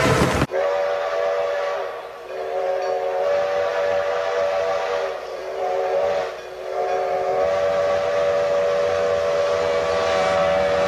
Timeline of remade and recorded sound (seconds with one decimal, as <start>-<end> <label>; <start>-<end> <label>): 0.0-10.9 recorded

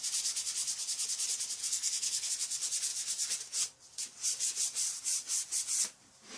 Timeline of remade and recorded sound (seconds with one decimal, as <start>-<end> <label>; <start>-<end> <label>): 0.0-1.6 recorded; 1.6-2.3 remade; 2.3-6.4 recorded

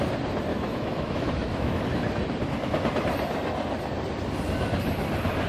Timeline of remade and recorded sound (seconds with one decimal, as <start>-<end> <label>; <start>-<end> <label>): 0.0-0.5 recorded; 0.5-1.8 remade; 1.8-5.5 recorded

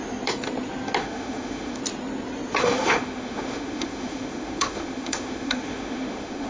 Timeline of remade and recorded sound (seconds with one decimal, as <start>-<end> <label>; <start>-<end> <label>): 0.0-1.0 recorded; 1.0-1.8 remade; 1.8-2.6 recorded; 2.6-6.5 remade

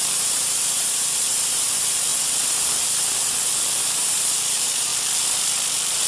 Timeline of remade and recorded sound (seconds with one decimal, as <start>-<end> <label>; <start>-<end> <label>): 0.0-2.1 remade; 2.1-3.8 recorded; 3.8-4.9 remade; 4.9-6.1 recorded

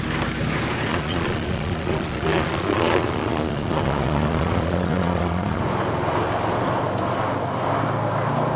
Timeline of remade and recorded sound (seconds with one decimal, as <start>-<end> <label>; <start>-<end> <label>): 0.0-0.9 recorded; 0.9-5.6 remade; 5.6-8.6 recorded

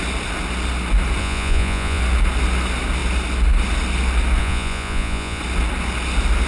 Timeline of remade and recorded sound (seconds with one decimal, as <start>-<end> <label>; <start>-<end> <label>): 0.0-1.2 recorded; 1.2-2.0 remade; 2.0-4.4 recorded; 4.4-5.4 remade; 5.4-6.5 recorded

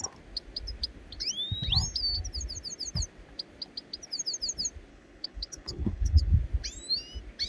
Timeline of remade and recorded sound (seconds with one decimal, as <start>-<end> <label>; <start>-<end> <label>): 0.0-4.9 recorded; 4.9-6.3 remade; 6.3-7.5 recorded